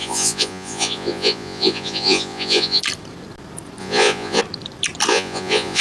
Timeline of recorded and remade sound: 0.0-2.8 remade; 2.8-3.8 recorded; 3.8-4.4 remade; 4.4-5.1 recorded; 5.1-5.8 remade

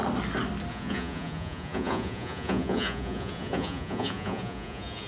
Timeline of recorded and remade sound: 0.0-0.7 recorded; 0.7-5.1 remade

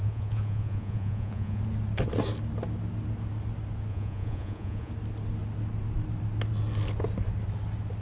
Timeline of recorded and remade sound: 0.0-1.6 remade; 1.6-3.9 recorded; 3.9-4.9 remade; 4.9-8.0 recorded

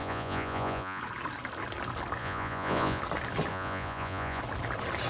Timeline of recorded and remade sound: 0.0-1.0 remade; 1.0-2.2 recorded; 2.2-3.0 remade; 3.0-3.5 recorded; 3.5-4.4 remade; 4.4-5.1 recorded

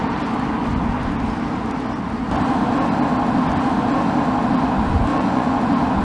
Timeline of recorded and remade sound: 0.0-5.1 recorded; 5.1-6.0 remade